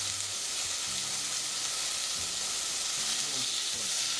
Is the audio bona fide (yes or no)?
yes